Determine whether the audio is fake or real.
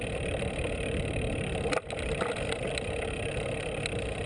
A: real